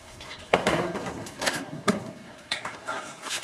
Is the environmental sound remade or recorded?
remade